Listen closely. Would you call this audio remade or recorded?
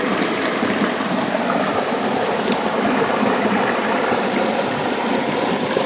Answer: remade